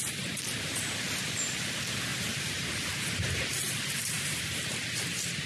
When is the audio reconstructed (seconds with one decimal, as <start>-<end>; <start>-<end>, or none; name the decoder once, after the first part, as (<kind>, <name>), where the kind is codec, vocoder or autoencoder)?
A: 2.1-3.0 (vocoder, BigVGAN v2)